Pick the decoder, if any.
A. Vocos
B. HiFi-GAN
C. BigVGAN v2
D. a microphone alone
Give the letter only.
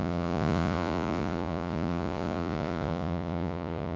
A